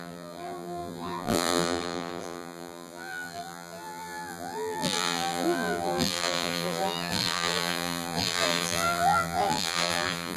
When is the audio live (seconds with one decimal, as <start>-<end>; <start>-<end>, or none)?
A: none